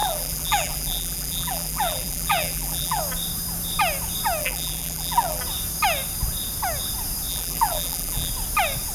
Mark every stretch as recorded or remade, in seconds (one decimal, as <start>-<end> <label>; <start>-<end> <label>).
0.0-3.0 remade; 3.0-4.4 recorded; 4.4-5.4 remade; 5.4-7.3 recorded; 7.3-8.3 remade; 8.3-8.9 recorded